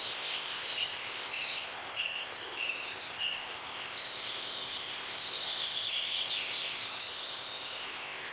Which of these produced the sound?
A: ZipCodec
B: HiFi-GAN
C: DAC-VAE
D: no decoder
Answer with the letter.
A